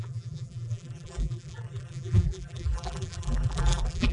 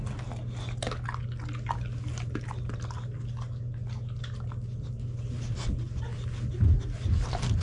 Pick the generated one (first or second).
first